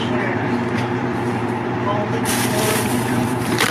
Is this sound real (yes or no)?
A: no